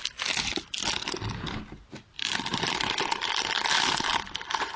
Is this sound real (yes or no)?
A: yes